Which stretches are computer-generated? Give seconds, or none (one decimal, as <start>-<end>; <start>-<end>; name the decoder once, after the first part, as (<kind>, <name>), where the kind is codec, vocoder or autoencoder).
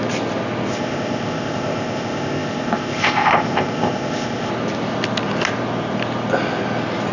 0.7-4.5 (codec, ZipCodec)